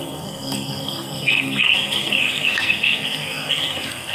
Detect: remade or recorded remade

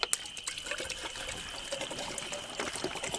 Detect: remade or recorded recorded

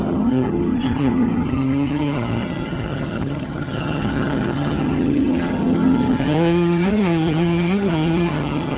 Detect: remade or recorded remade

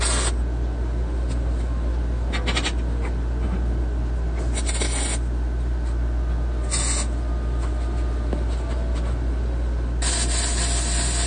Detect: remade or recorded recorded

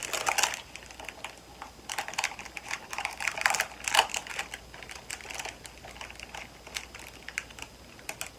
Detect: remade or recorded recorded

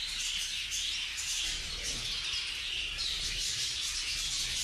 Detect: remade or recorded recorded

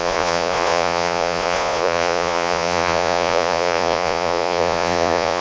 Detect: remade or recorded remade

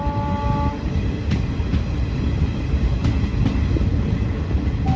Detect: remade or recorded recorded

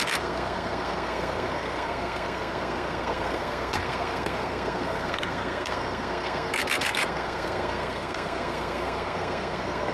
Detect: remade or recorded remade